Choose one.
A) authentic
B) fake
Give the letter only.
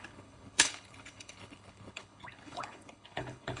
B